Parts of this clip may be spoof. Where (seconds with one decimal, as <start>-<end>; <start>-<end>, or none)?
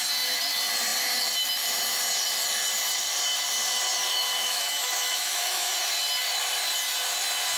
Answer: 4.4-5.8